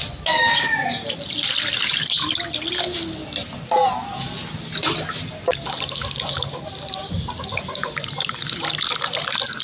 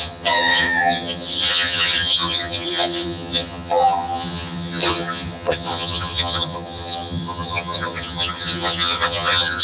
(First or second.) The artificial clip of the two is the second